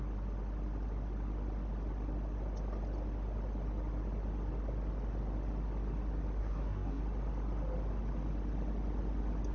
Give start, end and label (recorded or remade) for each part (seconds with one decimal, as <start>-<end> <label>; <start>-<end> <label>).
0.0-6.4 recorded; 6.4-7.0 remade; 7.0-9.5 recorded